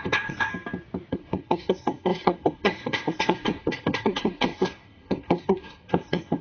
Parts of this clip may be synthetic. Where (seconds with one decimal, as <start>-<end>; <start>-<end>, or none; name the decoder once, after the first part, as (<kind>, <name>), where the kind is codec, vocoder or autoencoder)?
0.0-0.5 (codec, SNAC); 1.1-6.4